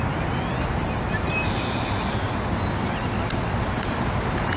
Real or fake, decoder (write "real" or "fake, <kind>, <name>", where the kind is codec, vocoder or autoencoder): real